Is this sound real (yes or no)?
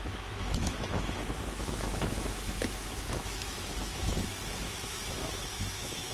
no